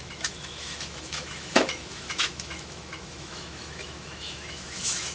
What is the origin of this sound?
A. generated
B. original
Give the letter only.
A